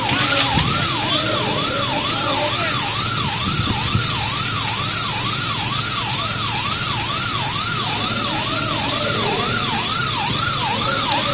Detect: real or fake real